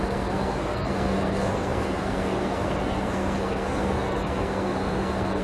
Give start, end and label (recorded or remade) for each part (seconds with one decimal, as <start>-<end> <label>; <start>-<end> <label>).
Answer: 0.0-5.4 remade